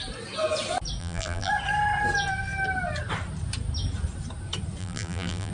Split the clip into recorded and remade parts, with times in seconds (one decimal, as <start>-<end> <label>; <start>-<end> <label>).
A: 0.0-1.0 recorded; 1.0-1.5 remade; 1.5-4.8 recorded; 4.8-5.5 remade